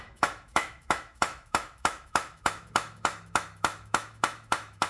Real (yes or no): no